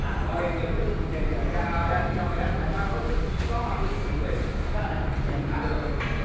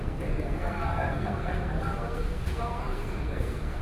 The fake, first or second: second